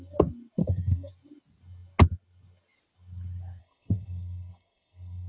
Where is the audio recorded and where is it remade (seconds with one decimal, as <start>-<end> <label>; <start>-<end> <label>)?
0.0-0.6 recorded; 0.6-1.1 remade; 1.1-3.6 recorded; 3.6-5.3 remade